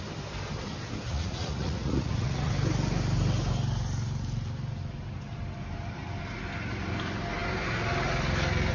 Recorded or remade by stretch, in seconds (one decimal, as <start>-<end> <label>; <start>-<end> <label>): 0.0-1.1 recorded; 1.1-2.5 remade; 2.5-8.7 recorded